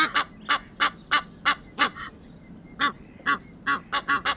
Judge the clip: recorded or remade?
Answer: recorded